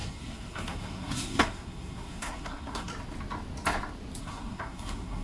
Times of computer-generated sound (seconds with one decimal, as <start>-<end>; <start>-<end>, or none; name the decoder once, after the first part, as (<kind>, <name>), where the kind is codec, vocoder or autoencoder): 0.0-2.9 (codec, SNAC); 4.2-5.2